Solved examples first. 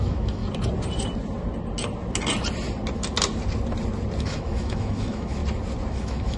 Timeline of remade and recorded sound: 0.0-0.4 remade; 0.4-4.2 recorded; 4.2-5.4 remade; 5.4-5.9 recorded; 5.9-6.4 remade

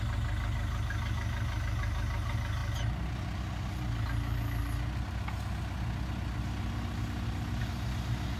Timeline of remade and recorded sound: 0.0-8.4 recorded

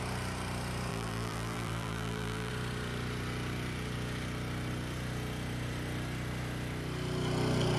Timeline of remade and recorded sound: 0.0-0.9 recorded; 0.9-2.5 remade; 2.5-7.8 recorded

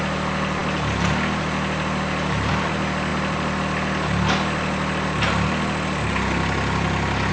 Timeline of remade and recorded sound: 0.0-7.3 recorded

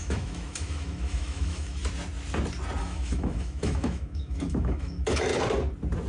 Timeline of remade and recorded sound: 0.0-1.8 remade; 1.8-2.8 recorded; 2.8-5.3 remade; 5.3-6.1 recorded